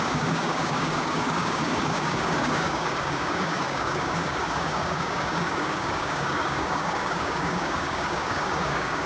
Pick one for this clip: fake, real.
fake